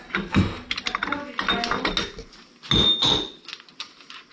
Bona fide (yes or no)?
yes